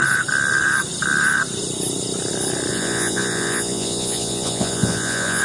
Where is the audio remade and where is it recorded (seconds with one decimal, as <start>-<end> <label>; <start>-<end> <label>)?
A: 0.0-2.7 recorded; 2.7-5.4 remade